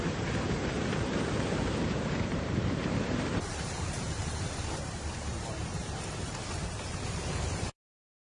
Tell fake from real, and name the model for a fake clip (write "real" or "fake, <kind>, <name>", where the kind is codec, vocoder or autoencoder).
fake, vocoder, BigVGAN v2